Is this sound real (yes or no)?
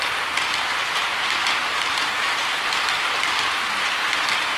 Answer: yes